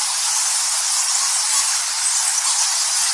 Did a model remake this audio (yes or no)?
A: no